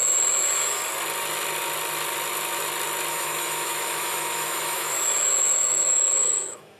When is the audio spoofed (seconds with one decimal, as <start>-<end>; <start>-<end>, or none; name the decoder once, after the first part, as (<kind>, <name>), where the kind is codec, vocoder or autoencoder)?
0.0-0.8 (autoencoder, DAC-VAE); 3.1-6.8